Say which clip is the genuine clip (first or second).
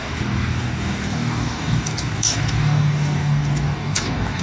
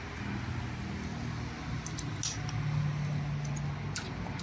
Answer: second